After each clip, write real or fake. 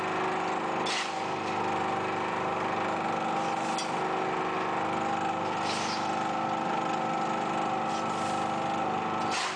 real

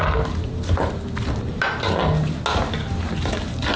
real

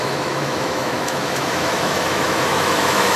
fake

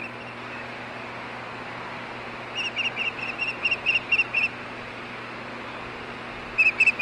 real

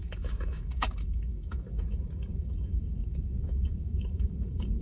fake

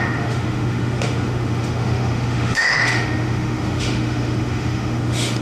fake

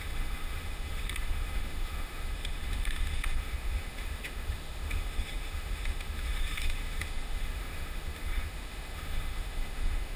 fake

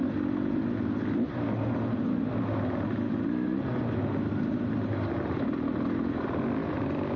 real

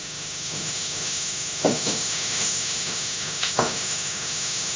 fake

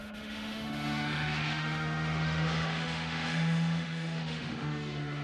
fake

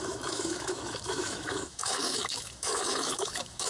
fake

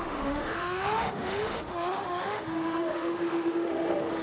fake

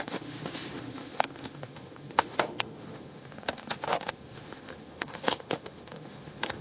fake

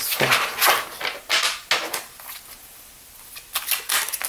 real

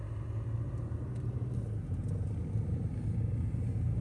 real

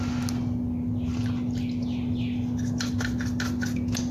real